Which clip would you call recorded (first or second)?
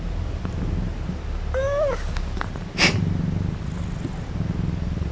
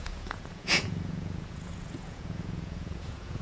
first